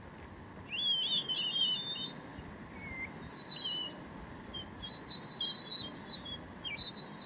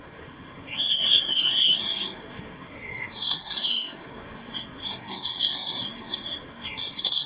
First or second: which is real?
first